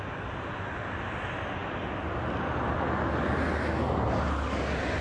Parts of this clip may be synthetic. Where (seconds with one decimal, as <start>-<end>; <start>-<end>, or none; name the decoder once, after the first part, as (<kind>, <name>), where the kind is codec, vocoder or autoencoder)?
none